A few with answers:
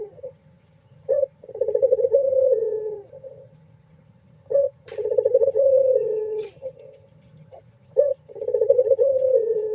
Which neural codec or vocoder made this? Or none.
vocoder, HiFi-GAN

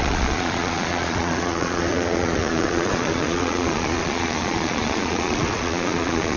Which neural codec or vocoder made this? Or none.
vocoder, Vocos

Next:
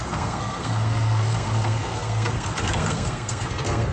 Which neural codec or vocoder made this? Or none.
codec, SNAC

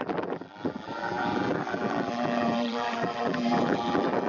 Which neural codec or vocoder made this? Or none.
vocoder, BigVGAN v2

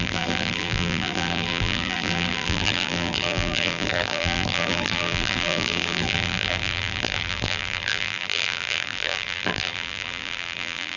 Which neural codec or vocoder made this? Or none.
vocoder, BigVGAN v2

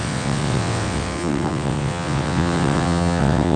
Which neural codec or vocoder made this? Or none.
vocoder, WaveNeXt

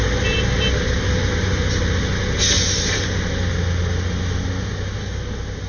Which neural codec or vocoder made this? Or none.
none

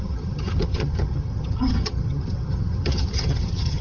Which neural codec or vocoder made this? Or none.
vocoder, HiFi-GAN